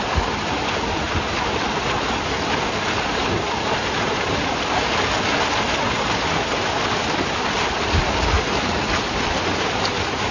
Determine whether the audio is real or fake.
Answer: real